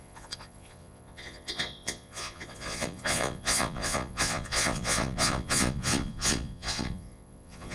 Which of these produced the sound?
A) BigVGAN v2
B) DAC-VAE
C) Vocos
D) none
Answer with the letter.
C